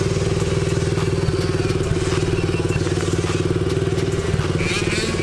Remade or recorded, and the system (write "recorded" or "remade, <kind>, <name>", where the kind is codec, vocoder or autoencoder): recorded